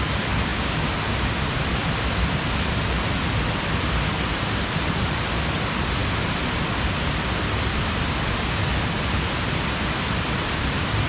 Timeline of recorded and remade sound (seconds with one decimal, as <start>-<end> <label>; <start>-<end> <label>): 0.0-11.1 recorded